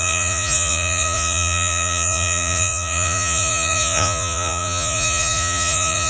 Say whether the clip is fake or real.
fake